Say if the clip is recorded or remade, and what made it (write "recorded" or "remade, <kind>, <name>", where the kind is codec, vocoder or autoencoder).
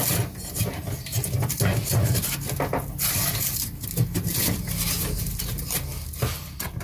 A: recorded